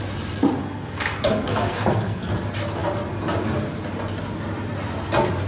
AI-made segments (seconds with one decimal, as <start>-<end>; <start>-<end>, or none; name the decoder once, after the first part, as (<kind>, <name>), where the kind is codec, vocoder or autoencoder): 0.6-2.3 (codec, SNAC)